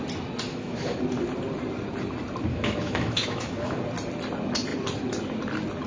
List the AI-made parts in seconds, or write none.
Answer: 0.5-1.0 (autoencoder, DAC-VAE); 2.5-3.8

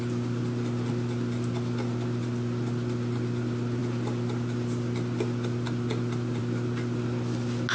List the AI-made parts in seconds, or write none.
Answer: none

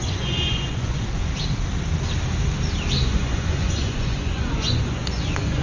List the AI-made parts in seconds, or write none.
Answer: 0.0-1.3 (vocoder, Vocos); 3.0-5.6

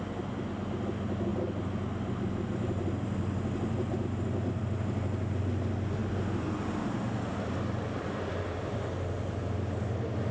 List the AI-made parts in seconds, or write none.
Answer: 6.0-6.7 (vocoder, BigVGAN v2); 7.3-8.8

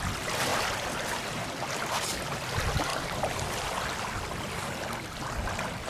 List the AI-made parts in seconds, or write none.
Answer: none

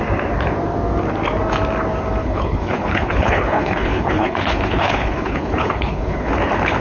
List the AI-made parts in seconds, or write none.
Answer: 2.2-6.3 (codec, HILCodec)

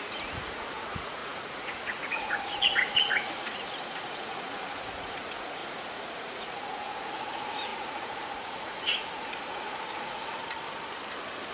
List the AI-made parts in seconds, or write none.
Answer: 0.0-10.4 (vocoder, Vocos)